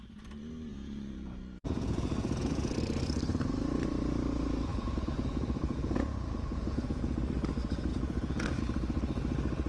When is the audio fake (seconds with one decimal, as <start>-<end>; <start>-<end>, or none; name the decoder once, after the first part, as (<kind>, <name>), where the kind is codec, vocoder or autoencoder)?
0.7-2.8 (vocoder, Vocos); 4.7-7.2; 7.9-8.6